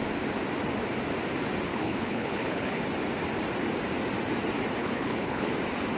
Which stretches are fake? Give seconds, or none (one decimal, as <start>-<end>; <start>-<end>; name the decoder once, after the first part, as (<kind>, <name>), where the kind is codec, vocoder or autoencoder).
1.7-2.8 (codec, HILCodec); 4.8-5.5